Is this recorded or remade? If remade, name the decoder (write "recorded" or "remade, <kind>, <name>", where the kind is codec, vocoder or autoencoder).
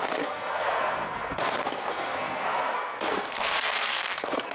remade, codec, SNAC